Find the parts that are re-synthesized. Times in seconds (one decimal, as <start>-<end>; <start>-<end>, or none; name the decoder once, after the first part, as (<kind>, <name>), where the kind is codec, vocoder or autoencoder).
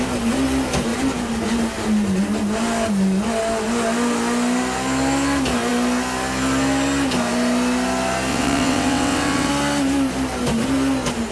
8.3-9.5 (vocoder, WaveNeXt)